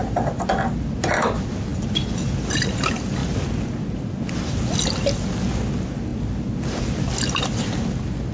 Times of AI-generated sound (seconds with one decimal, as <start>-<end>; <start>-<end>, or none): none